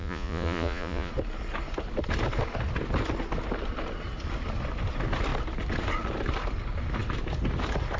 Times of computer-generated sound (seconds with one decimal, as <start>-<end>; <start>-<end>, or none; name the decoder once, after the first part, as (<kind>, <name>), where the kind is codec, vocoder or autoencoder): 0.0-1.1 (vocoder, Vocos)